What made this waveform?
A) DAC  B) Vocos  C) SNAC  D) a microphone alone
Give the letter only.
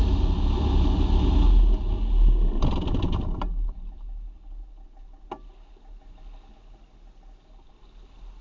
D